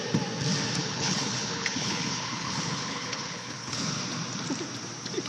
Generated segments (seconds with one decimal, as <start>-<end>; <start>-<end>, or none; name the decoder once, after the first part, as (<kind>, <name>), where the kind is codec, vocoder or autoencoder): 0.8-4.0 (codec, HILCodec)